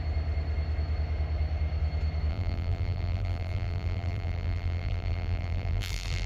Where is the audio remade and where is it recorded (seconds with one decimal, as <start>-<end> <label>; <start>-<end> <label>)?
0.0-2.3 recorded; 2.3-6.3 remade